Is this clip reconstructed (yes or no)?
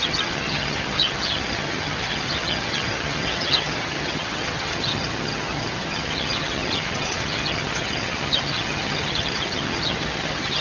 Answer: yes